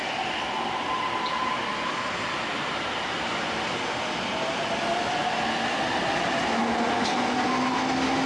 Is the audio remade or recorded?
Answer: recorded